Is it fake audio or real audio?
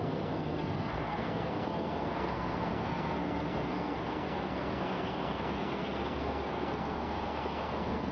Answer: fake